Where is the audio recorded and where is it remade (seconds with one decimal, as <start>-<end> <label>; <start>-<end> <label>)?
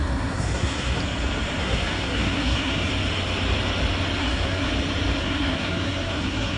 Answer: 0.0-1.0 remade; 1.0-1.6 recorded; 1.6-2.9 remade; 2.9-4.2 recorded; 4.2-4.7 remade; 4.7-5.2 recorded; 5.2-6.6 remade